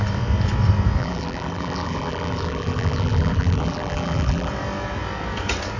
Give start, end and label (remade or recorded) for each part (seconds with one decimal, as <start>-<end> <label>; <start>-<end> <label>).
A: 0.0-1.0 recorded; 1.0-4.5 remade; 4.5-5.8 recorded